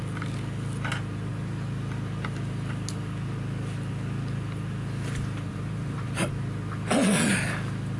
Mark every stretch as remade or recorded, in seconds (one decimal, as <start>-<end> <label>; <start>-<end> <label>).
0.0-5.5 recorded; 5.5-6.3 remade; 6.3-8.0 recorded